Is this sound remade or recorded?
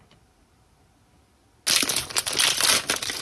recorded